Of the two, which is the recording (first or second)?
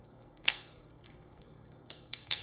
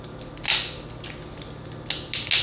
second